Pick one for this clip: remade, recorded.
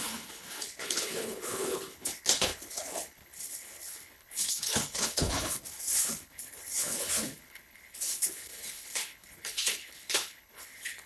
remade